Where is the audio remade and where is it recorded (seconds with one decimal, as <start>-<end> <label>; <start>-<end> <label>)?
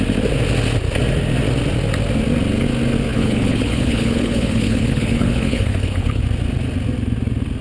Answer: 0.0-3.1 recorded; 3.1-6.2 remade; 6.2-7.6 recorded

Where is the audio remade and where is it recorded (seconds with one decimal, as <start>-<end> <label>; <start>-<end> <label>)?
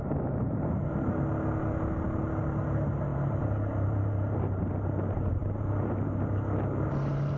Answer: 0.0-3.1 recorded; 3.1-4.7 remade; 4.7-5.4 recorded; 5.4-6.1 remade; 6.1-7.4 recorded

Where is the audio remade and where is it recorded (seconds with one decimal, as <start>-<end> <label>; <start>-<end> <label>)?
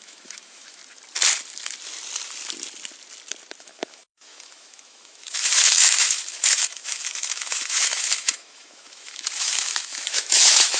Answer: 0.0-0.8 remade; 0.8-3.6 recorded; 3.6-10.8 remade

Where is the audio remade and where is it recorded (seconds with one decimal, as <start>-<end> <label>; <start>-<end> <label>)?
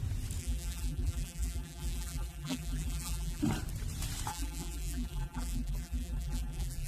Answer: 0.0-0.4 recorded; 0.4-3.4 remade; 3.4-4.3 recorded; 4.3-6.9 remade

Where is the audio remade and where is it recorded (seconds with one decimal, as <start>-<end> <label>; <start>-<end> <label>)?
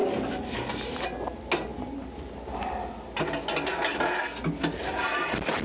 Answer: 0.0-5.6 recorded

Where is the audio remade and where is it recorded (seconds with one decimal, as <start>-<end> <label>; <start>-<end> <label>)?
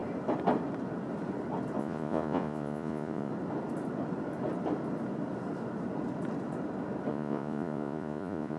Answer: 0.0-1.8 recorded; 1.8-3.3 remade; 3.3-7.1 recorded; 7.1-8.6 remade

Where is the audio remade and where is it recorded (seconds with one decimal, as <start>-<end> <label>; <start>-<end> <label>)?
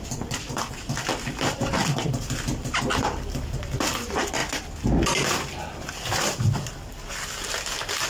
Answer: 0.0-1.8 remade; 1.8-3.0 recorded; 3.0-4.4 remade; 4.4-5.9 recorded; 5.9-8.1 remade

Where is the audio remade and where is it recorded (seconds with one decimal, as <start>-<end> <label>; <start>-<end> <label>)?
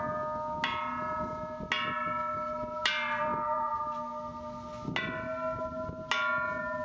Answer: 0.0-2.8 recorded; 2.8-3.8 remade; 3.8-6.8 recorded